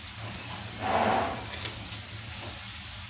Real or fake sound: real